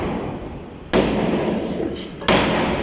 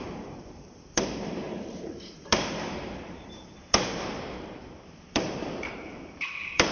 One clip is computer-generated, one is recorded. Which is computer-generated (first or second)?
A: second